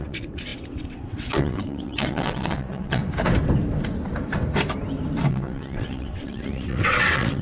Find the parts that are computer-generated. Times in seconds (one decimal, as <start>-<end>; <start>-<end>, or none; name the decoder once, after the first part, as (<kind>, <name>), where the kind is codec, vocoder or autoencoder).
0.0-3.0 (vocoder, WaveNeXt); 5.3-7.4